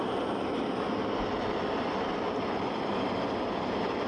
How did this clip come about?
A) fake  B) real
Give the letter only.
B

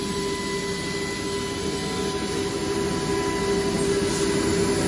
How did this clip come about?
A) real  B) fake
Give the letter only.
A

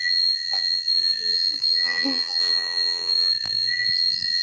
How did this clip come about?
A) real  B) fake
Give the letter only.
B